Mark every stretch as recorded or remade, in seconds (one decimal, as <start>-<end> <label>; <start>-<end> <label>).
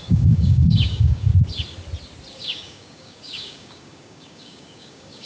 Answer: 0.0-1.3 remade; 1.3-2.3 recorded; 2.3-5.3 remade